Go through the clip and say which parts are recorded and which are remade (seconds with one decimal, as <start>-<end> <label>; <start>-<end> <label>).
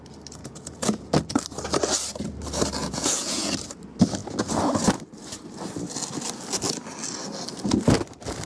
0.0-0.4 recorded; 0.4-1.1 remade; 1.1-2.8 recorded; 2.8-3.5 remade; 3.5-8.5 recorded